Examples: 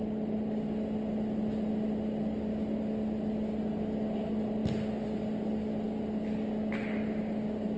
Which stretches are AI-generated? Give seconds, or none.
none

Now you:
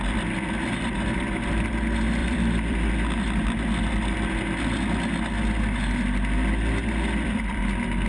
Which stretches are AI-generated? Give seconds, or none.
2.2-2.9; 6.8-7.6

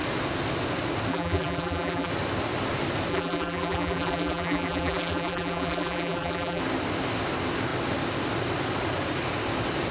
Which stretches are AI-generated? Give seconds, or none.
1.1-2.1; 3.1-6.6